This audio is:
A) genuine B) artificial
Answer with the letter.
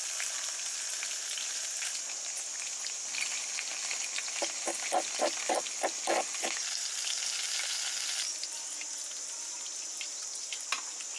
A